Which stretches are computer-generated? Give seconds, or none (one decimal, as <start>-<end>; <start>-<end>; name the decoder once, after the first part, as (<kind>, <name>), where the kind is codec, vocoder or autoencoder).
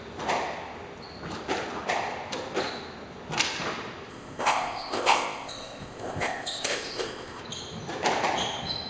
4.1-7.4 (codec, ZipCodec)